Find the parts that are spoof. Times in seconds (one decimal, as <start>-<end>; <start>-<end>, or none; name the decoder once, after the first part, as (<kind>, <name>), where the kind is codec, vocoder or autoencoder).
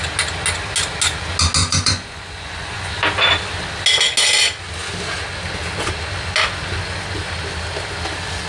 1.6-2.9 (vocoder, Vocos)